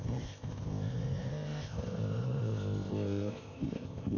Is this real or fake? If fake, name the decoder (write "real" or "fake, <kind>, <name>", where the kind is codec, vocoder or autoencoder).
fake, codec, ZipCodec